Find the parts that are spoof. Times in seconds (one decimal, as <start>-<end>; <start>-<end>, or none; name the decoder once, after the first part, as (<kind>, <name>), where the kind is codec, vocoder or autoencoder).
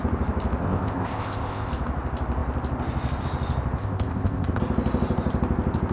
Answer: 0.6-1.7 (codec, ZipCodec); 3.8-4.6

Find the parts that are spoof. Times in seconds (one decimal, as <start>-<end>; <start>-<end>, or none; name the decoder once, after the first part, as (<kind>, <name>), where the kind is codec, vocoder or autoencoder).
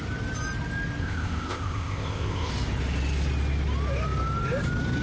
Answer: 1.0-2.5 (codec, ZipCodec)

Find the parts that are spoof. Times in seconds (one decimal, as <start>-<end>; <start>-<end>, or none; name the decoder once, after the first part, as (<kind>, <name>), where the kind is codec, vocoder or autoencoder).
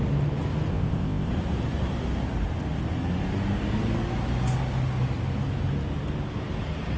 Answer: 0.7-1.3 (codec, ZipCodec)